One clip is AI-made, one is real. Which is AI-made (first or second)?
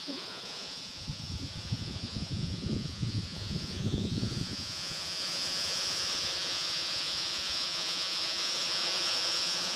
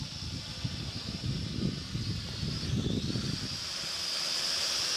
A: first